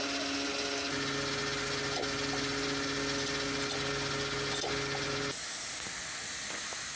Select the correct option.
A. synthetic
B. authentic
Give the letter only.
B